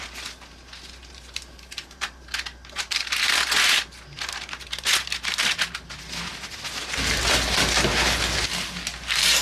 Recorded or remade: recorded